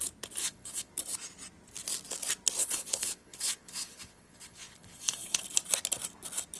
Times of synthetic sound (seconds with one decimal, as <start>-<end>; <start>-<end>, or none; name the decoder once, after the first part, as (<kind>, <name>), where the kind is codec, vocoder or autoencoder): 0.4-0.9 (vocoder, Vocos); 2.6-5.4